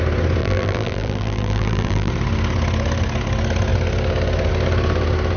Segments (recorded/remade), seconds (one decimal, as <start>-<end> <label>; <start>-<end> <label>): 0.0-0.4 recorded; 0.4-2.1 remade; 2.1-5.4 recorded